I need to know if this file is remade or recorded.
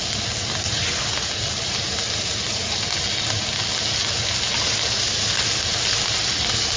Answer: recorded